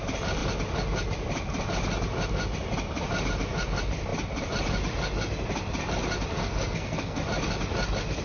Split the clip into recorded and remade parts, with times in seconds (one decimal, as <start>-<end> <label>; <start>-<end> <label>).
0.0-6.4 recorded; 6.4-7.2 remade; 7.2-8.2 recorded